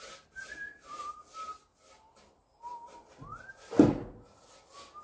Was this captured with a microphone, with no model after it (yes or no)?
yes